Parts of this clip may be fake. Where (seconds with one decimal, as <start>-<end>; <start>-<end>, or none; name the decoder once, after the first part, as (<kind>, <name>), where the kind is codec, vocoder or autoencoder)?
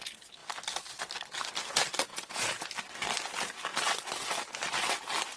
2.1-2.7 (vocoder, Vocos)